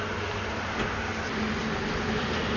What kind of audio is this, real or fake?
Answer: real